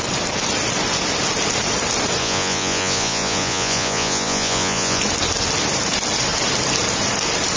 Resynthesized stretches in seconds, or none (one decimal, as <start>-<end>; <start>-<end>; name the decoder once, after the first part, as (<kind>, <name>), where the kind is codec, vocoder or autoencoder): 2.2-5.0 (vocoder, Vocos)